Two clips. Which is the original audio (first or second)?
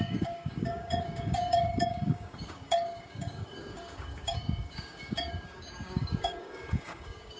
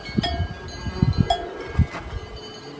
second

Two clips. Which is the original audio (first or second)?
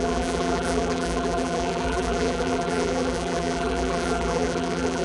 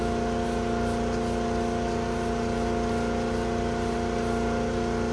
second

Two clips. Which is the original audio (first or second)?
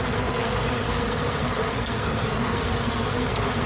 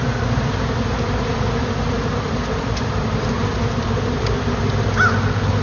second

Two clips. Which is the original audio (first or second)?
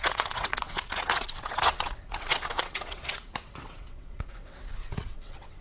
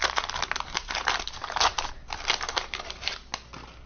second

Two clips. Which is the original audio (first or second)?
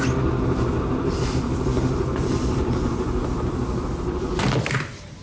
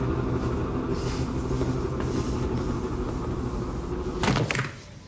second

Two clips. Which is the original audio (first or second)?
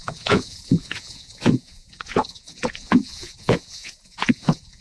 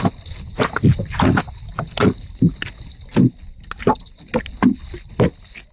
second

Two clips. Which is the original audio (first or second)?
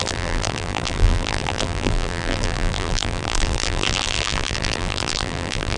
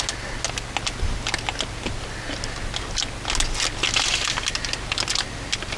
second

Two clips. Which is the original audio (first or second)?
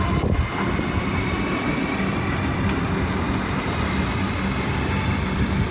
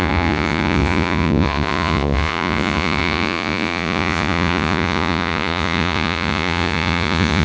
first